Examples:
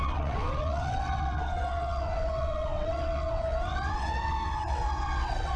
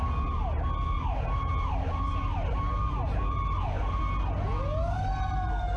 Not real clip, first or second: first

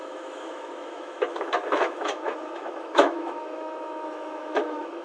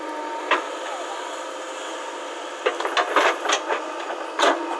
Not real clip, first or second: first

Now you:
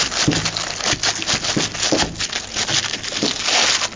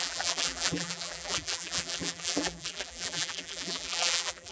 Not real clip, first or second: second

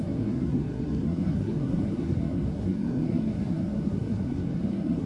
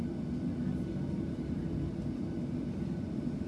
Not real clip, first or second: first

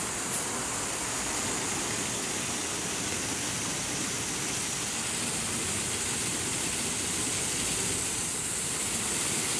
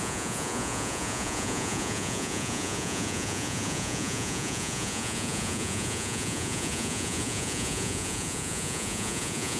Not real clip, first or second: second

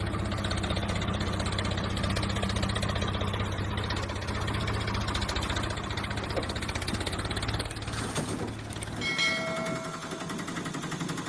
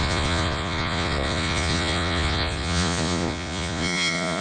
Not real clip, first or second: second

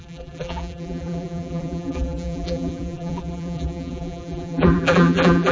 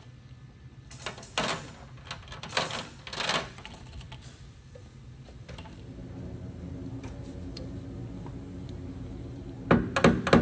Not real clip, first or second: first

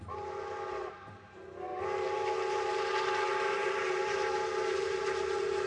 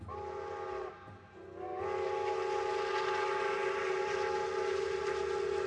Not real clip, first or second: first